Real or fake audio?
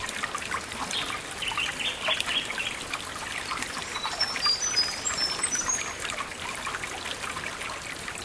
real